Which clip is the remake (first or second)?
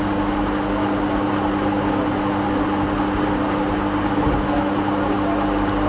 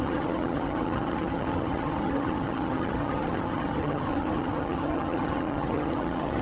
second